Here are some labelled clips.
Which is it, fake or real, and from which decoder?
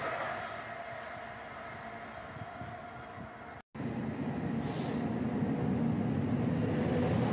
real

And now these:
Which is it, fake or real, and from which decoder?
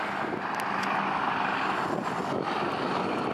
real